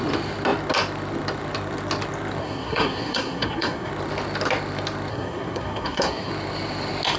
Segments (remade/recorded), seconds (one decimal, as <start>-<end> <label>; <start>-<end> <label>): 0.0-2.4 recorded; 2.4-3.9 remade; 3.9-5.1 recorded; 5.1-6.3 remade; 6.3-7.2 recorded